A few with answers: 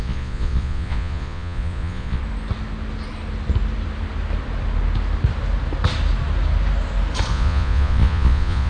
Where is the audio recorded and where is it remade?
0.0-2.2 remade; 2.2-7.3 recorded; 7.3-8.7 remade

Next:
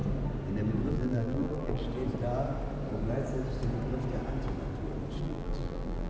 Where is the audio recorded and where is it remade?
0.0-0.9 recorded; 0.9-1.8 remade; 1.8-5.2 recorded; 5.2-6.1 remade

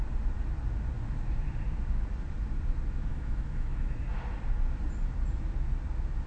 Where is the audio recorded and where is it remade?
0.0-3.1 recorded; 3.1-4.0 remade; 4.0-6.3 recorded

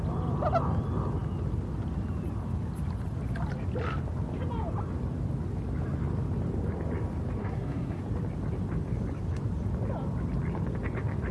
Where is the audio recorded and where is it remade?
0.0-7.4 recorded; 7.4-8.0 remade; 8.0-11.3 recorded

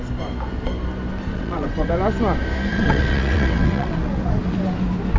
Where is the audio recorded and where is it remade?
0.0-1.3 recorded; 1.3-1.9 remade; 1.9-2.7 recorded; 2.7-4.1 remade; 4.1-5.2 recorded

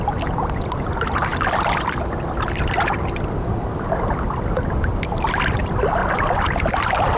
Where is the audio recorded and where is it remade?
0.0-7.2 recorded